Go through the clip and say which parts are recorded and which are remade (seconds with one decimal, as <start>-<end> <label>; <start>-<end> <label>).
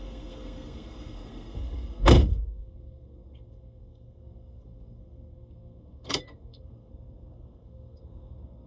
0.0-8.7 remade